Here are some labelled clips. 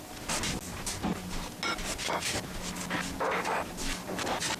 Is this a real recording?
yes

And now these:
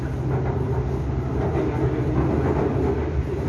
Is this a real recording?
yes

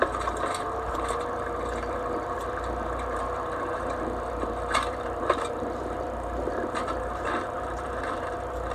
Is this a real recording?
no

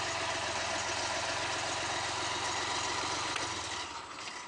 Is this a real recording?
yes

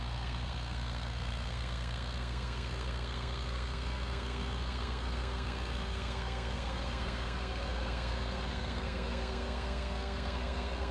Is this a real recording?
no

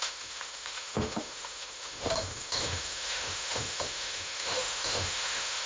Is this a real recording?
no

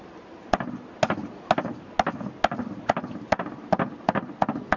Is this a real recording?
yes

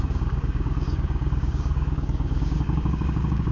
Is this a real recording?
no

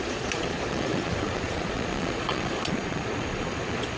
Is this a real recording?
no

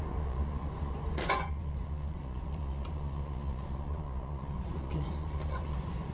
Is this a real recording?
no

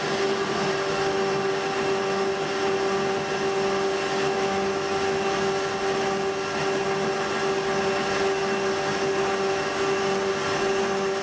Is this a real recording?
yes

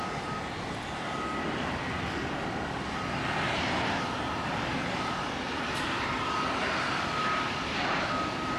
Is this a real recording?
yes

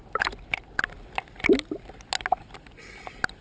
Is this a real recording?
yes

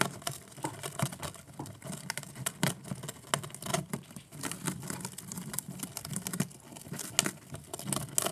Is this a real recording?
yes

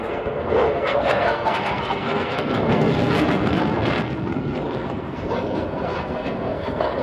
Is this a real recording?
no